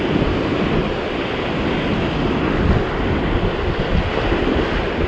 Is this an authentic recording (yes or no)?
yes